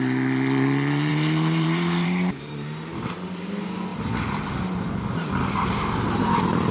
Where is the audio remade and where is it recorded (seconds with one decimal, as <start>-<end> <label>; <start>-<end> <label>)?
0.0-1.1 recorded; 1.1-2.5 remade; 2.5-6.7 recorded